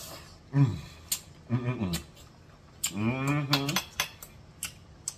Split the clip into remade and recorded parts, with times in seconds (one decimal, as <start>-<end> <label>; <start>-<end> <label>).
0.0-5.2 recorded